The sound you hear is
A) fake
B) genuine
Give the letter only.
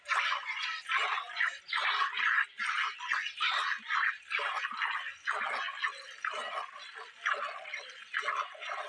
B